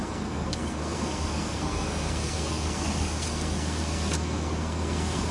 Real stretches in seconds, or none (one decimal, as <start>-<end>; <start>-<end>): none